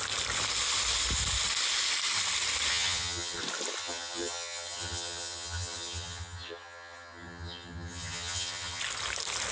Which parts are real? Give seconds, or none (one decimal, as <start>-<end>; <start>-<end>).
0.0-2.7; 3.4-3.8; 8.8-9.5